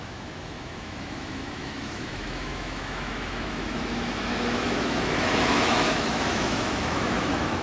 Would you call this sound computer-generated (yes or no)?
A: yes